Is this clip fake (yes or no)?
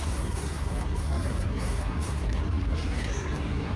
yes